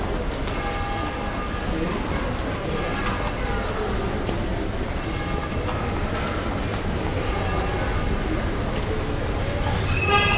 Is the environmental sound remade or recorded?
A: recorded